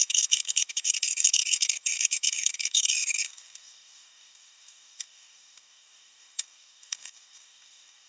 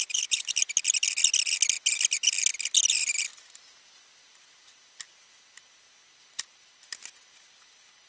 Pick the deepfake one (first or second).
first